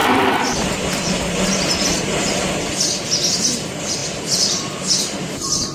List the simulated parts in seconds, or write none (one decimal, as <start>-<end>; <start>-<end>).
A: 3.4-5.7